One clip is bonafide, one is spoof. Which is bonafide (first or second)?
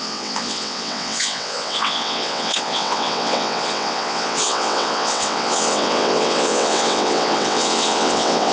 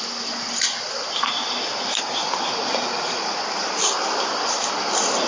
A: second